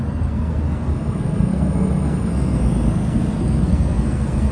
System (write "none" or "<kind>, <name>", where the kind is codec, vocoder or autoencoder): codec, SNAC